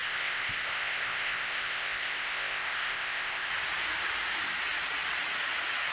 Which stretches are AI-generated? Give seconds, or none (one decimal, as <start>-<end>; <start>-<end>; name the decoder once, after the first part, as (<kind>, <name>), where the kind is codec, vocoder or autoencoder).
0.0-3.5 (codec, ZipCodec)